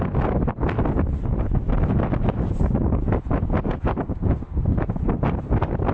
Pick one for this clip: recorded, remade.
recorded